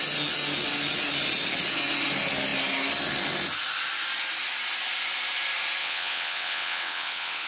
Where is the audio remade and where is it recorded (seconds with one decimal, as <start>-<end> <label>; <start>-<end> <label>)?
0.0-5.8 recorded; 5.8-7.5 remade